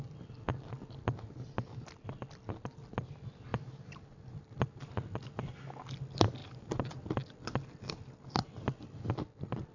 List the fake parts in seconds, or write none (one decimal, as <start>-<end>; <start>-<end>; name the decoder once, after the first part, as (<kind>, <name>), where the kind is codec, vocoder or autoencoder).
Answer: 3.5-4.9 (vocoder, BigVGAN v2); 6.4-6.9